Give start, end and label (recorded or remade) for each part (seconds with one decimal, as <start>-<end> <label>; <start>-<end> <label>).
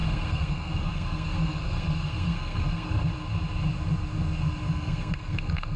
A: 0.0-3.1 remade; 3.1-4.7 recorded; 4.7-5.8 remade